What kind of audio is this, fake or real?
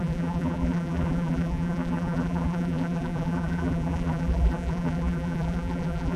fake